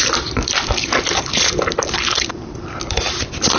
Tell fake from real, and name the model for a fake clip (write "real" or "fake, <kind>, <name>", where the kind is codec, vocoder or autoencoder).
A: fake, vocoder, BigVGAN v2